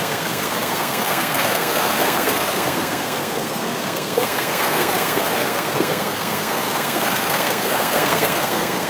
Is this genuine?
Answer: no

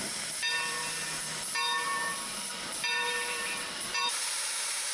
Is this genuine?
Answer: no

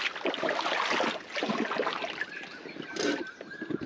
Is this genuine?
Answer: yes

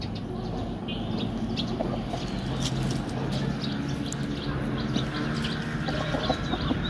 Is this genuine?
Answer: yes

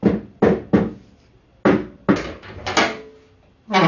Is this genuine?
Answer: yes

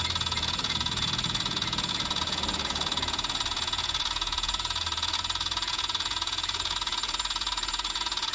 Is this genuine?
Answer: no